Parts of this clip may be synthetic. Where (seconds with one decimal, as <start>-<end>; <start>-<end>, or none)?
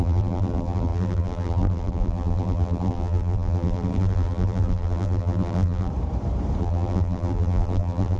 0.0-5.9; 6.6-8.2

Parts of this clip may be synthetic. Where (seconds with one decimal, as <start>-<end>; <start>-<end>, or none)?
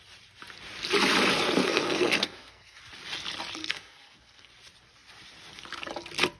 1.6-2.8; 3.6-4.5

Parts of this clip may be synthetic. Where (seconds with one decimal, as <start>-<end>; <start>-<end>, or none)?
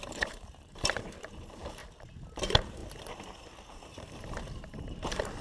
0.0-1.8; 2.4-2.8; 3.9-5.4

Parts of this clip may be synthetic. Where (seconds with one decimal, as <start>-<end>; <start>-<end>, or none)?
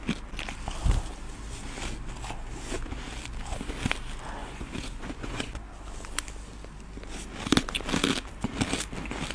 4.4-5.5